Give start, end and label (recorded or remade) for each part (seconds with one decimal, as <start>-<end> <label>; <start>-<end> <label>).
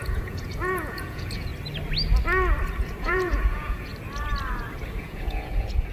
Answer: 0.0-1.5 remade; 1.5-3.0 recorded; 3.0-3.9 remade; 3.9-5.0 recorded; 5.0-5.9 remade